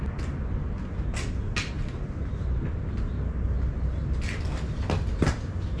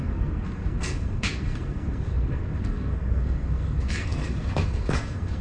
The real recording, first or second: first